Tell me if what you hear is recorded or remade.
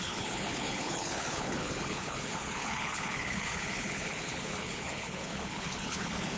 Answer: remade